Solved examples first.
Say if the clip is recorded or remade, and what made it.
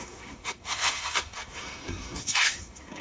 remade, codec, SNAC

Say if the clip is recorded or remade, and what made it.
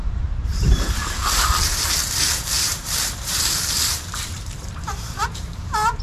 remade, vocoder, BigVGAN v2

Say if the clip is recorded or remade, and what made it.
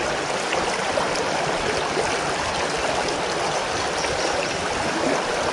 recorded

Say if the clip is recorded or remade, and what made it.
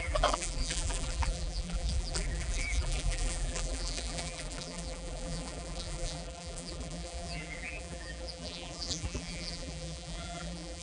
remade, vocoder, BigVGAN v2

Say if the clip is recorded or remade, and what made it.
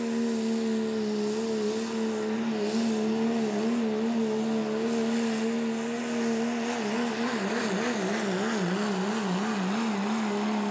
recorded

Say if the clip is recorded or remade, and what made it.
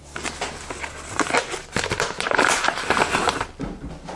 recorded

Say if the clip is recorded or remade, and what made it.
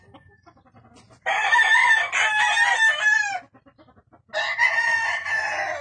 recorded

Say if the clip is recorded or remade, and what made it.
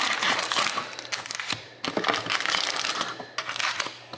recorded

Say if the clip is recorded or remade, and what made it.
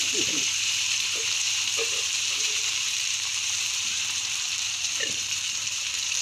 remade, vocoder, BigVGAN v2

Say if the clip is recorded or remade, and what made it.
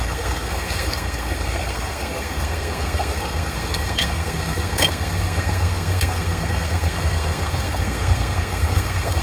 remade, codec, SNAC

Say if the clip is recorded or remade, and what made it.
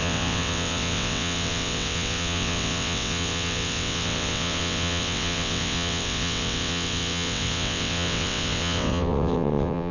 remade, vocoder, WaveNeXt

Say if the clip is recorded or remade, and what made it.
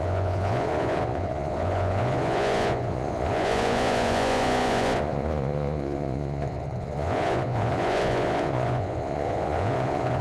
remade, vocoder, Vocos